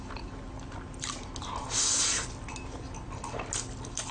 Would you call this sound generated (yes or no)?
no